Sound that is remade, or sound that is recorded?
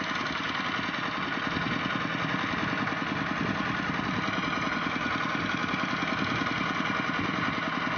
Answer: recorded